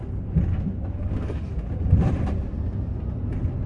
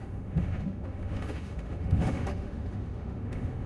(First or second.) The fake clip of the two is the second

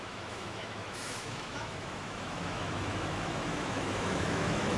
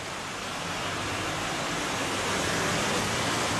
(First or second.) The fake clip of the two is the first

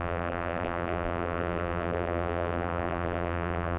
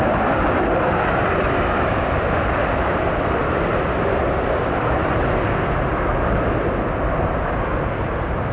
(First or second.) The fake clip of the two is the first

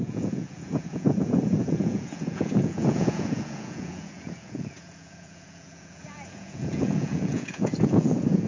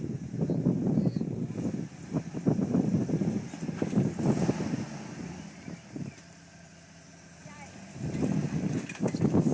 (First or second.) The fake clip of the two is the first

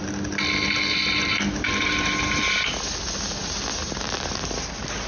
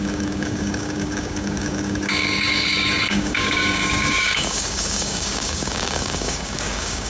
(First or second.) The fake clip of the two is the second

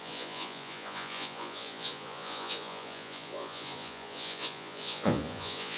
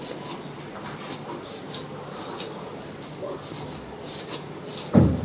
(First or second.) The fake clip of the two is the first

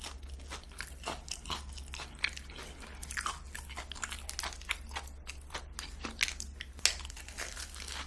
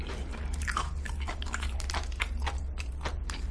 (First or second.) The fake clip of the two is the second